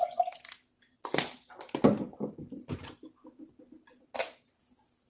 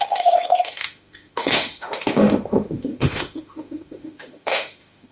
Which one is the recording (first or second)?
first